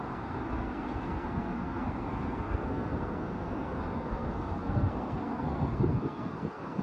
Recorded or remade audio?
remade